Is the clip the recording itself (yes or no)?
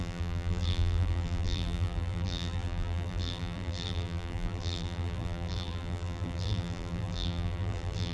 no